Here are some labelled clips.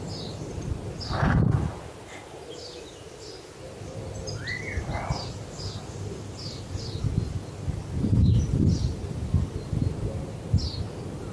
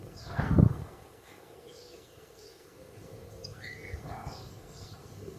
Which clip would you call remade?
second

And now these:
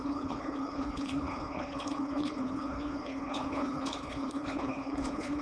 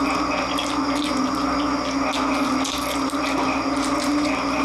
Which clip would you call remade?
first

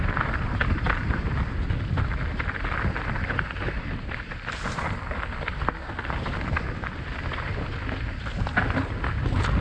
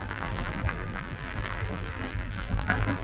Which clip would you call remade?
second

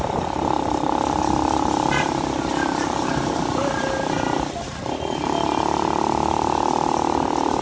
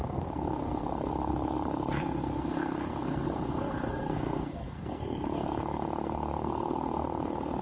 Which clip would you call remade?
second